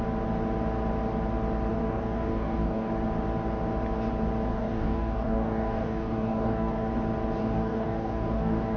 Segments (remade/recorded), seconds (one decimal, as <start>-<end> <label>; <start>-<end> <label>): 0.0-1.7 recorded; 1.7-2.9 remade; 2.9-4.5 recorded; 4.5-6.9 remade; 6.9-7.4 recorded; 7.4-8.8 remade